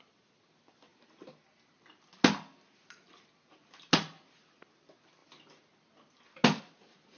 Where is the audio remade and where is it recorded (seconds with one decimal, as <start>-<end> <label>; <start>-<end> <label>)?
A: 0.0-7.2 recorded